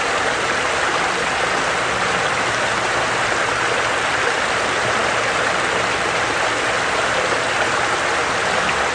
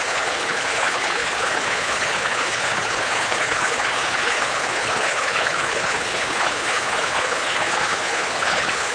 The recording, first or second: first